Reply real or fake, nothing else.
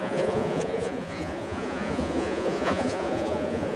fake